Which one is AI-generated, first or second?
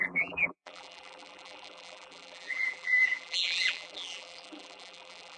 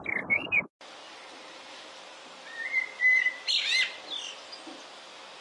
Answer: first